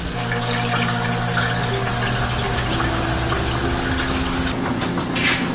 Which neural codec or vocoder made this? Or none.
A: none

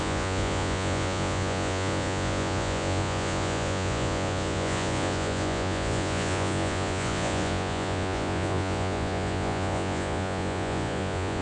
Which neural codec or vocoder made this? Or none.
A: vocoder, Vocos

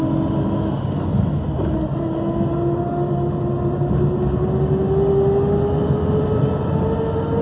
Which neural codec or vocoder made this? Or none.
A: none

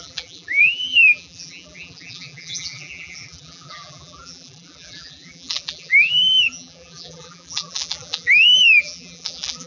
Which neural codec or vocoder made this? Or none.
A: vocoder, BigVGAN v2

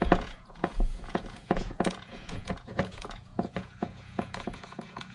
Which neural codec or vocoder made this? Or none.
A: vocoder, Vocos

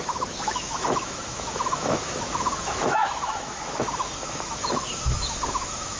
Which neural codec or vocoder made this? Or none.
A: autoencoder, DAC-VAE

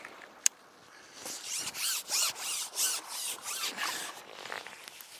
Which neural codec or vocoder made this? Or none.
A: none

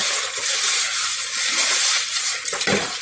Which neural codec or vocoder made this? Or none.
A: none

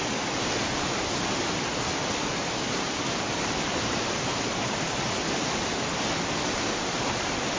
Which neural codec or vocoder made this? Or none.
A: none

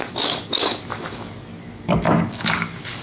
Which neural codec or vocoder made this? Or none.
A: codec, DAC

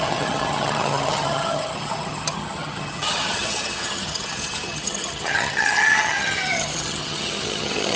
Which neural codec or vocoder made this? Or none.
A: vocoder, HiFi-GAN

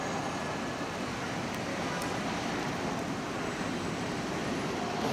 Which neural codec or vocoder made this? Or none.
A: none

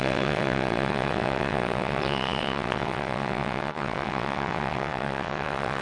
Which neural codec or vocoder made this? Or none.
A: vocoder, WaveNeXt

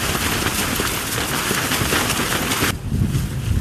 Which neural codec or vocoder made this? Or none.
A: none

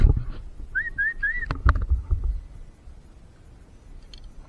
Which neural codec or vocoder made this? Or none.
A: none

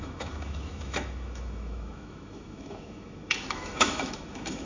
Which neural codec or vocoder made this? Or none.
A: autoencoder, DAC-VAE